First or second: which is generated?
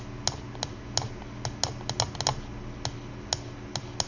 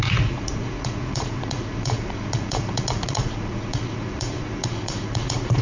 second